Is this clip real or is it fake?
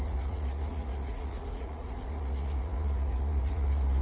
fake